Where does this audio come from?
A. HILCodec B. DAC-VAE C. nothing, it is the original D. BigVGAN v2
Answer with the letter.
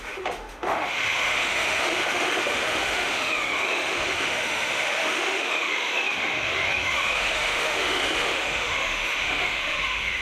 B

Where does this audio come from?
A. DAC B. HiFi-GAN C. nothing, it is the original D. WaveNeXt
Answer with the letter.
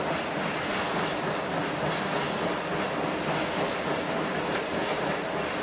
C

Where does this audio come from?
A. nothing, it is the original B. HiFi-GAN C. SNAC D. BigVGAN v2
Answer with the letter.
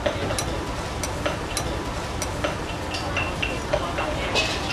A